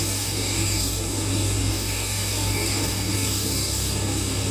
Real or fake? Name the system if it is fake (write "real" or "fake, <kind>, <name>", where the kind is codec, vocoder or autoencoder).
fake, codec, DAC